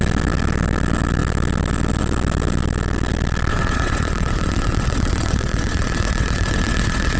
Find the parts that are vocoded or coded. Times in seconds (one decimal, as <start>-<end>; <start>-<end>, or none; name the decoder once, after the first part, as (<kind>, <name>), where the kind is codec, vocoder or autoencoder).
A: 3.5-7.2 (vocoder, WaveNeXt)